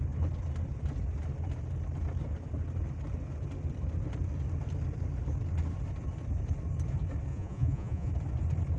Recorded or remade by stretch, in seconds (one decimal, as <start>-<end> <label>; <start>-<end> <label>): 0.0-7.3 recorded; 7.3-8.1 remade; 8.1-8.8 recorded